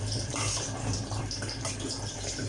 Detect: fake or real fake